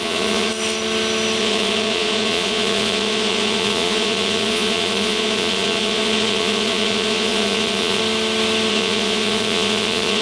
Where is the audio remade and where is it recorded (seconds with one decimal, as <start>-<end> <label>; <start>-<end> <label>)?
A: 0.0-0.5 remade; 0.5-1.4 recorded; 1.4-8.0 remade; 8.0-8.7 recorded; 8.7-10.2 remade